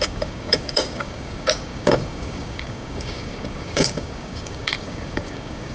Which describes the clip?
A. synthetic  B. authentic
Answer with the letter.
A